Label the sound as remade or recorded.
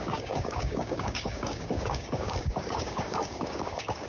remade